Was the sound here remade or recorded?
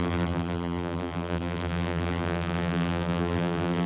remade